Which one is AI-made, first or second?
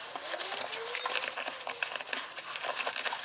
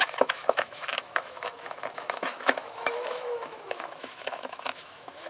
second